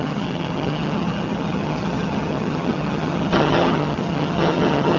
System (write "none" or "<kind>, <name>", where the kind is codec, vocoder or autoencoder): vocoder, HiFi-GAN